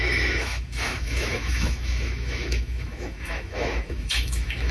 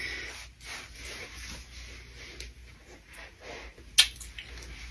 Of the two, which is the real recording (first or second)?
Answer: second